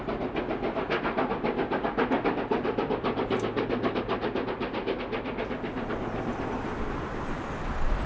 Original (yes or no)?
yes